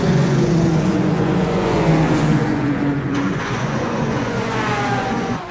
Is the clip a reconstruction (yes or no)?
yes